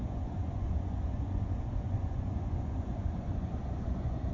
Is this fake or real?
fake